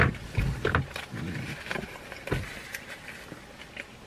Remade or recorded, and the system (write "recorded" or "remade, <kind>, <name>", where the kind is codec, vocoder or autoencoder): recorded